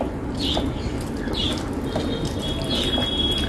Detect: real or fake real